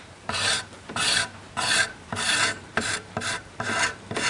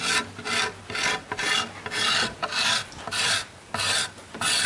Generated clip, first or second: first